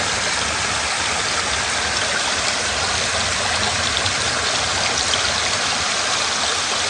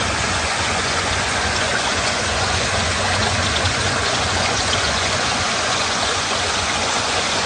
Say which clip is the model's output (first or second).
second